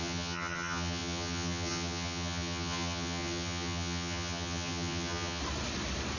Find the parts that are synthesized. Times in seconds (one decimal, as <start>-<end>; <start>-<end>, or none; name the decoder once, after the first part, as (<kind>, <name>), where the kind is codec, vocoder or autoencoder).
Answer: 0.0-5.4 (vocoder, HiFi-GAN)